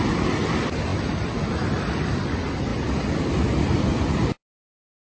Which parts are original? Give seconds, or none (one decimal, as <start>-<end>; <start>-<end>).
0.0-5.1